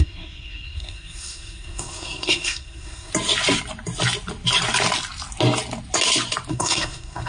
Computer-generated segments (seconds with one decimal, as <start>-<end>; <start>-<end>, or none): 0.0-3.1; 6.5-7.3